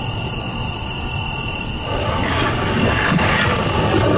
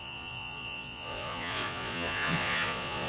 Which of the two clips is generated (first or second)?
second